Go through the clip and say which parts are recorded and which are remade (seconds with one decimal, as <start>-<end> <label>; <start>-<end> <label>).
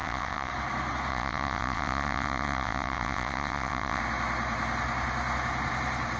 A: 0.0-0.5 remade; 0.5-1.1 recorded; 1.1-4.0 remade; 4.0-6.2 recorded